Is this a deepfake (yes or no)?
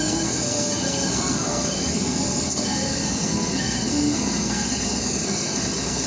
yes